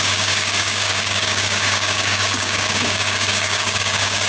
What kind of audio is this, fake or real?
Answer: fake